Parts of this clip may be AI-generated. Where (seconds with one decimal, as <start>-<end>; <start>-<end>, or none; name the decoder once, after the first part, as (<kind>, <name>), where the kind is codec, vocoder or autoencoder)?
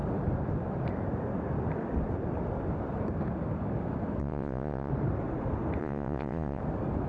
4.2-4.9 (vocoder, Vocos); 5.8-6.6